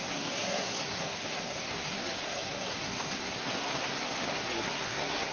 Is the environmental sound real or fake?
fake